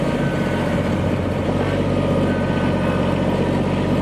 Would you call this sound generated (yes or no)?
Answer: no